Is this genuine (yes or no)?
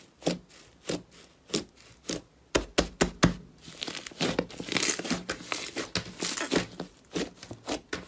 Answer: yes